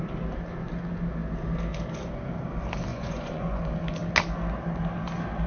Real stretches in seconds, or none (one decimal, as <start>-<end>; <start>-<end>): 0.0-2.9; 3.6-5.5